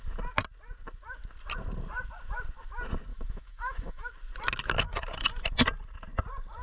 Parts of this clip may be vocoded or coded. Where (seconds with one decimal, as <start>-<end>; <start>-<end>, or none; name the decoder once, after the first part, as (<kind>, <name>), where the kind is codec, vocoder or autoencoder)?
3.1-4.1 (autoencoder, DAC-VAE)